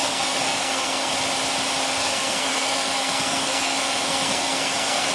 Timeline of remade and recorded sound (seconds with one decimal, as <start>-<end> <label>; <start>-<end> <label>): 0.0-1.1 remade; 1.1-2.0 recorded; 2.0-5.1 remade